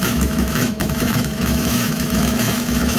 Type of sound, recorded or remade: remade